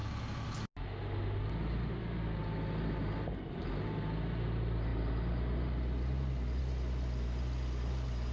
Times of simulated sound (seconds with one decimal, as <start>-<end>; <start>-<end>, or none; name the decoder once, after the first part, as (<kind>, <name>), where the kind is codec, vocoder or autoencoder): none